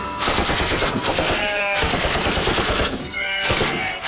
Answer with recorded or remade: remade